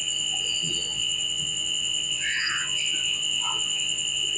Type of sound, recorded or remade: remade